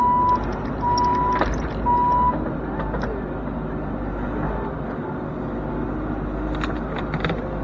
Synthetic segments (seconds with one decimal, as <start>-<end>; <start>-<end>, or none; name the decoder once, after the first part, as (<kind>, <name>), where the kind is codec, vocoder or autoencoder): none